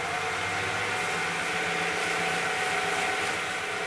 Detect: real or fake real